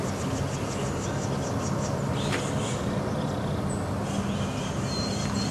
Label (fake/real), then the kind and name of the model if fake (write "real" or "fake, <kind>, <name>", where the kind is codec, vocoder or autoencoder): real